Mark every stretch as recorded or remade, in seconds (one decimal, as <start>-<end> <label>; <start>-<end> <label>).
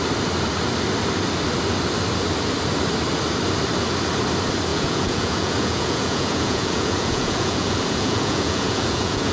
0.0-4.7 recorded; 4.7-9.3 remade